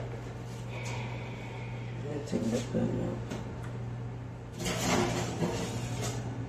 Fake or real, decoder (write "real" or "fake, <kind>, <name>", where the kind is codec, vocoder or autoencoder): fake, vocoder, BigVGAN v2